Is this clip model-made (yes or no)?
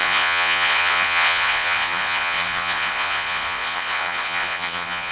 yes